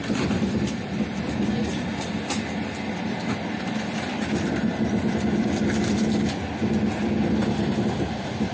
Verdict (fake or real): real